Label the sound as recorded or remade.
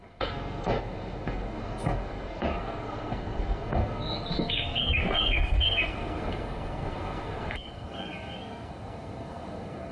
remade